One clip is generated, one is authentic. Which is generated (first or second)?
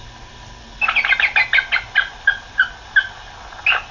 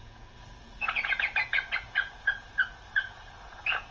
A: second